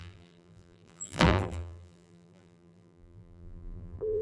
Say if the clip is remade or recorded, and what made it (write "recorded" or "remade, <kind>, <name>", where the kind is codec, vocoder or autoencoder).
remade, vocoder, BigVGAN v2